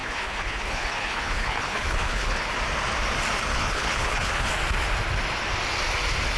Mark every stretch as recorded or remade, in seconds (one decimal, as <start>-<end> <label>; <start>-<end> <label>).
0.0-2.5 remade; 2.5-3.5 recorded; 3.5-4.5 remade; 4.5-6.4 recorded